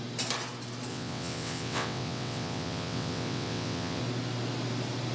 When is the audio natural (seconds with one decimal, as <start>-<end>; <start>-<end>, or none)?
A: 0.0-0.9; 4.0-5.1